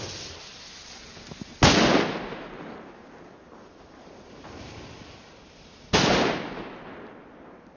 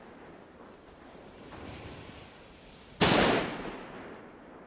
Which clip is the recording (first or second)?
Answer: first